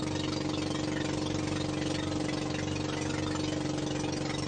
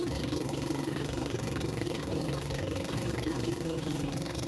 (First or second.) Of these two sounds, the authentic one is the first